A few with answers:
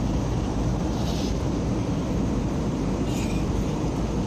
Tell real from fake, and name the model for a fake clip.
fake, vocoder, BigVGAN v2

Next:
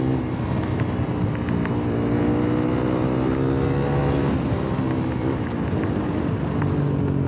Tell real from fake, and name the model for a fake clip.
real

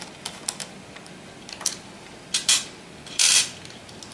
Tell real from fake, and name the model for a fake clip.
real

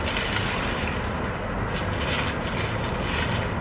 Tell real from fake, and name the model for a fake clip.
real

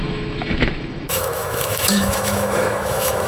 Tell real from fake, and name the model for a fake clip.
fake, autoencoder, DAC-VAE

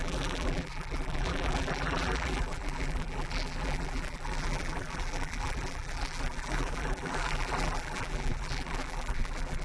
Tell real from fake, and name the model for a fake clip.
fake, vocoder, BigVGAN v2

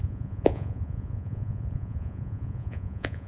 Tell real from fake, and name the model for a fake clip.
fake, vocoder, Vocos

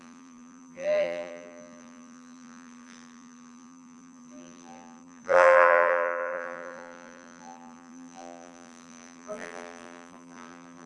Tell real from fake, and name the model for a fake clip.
fake, vocoder, BigVGAN v2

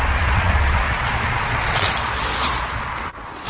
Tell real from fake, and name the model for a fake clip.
fake, vocoder, Vocos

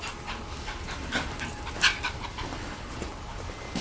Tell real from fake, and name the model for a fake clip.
real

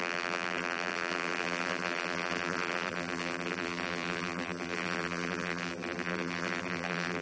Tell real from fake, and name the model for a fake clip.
fake, vocoder, BigVGAN v2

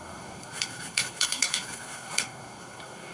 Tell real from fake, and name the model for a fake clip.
fake, codec, SNAC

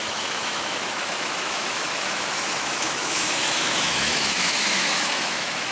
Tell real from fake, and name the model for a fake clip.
fake, autoencoder, DAC-VAE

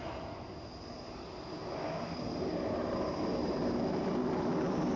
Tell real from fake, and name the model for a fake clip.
real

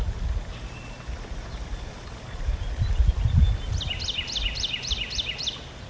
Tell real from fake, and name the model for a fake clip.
real